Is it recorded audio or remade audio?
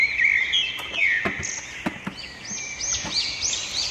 recorded